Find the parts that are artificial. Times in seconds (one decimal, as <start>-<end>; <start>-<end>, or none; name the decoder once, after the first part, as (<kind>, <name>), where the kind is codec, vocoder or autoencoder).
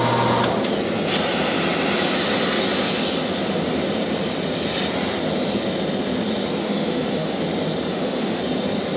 6.6-7.4 (autoencoder, DAC-VAE); 7.9-8.4